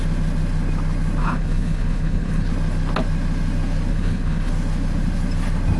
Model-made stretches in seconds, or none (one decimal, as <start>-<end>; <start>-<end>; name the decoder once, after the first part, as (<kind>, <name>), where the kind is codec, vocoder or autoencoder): 1.2-2.5 (codec, HILCodec); 3.9-4.5